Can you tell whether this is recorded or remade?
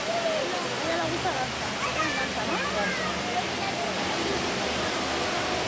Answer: recorded